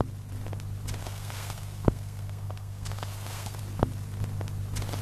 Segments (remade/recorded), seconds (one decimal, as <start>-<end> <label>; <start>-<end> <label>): 0.0-1.0 recorded; 1.0-3.6 remade; 3.6-5.0 recorded